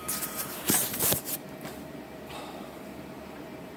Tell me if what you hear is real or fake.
fake